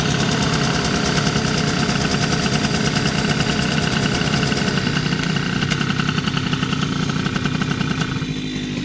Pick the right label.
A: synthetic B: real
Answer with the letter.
B